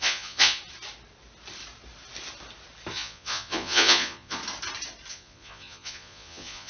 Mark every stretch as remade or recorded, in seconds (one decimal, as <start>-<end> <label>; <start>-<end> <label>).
0.0-0.6 remade; 0.6-2.9 recorded; 2.9-4.4 remade; 4.4-5.1 recorded; 5.1-6.7 remade